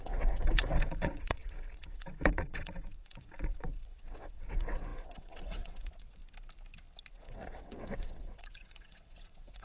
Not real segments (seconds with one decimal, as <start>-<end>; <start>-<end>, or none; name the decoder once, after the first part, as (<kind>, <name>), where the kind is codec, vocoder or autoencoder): 0.0-6.2 (vocoder, WaveNeXt); 7.1-9.6